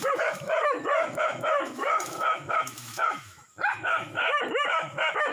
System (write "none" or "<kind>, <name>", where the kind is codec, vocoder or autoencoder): autoencoder, DAC-VAE